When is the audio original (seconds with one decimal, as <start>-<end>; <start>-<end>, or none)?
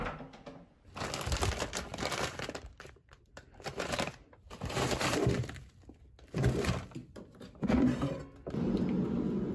0.0-1.9; 5.7-9.5